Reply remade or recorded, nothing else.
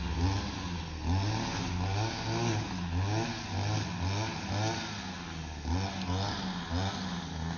recorded